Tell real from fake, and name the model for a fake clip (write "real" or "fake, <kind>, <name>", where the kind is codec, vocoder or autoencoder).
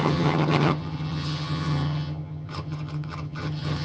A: fake, vocoder, HiFi-GAN